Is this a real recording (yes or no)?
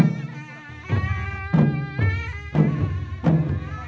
yes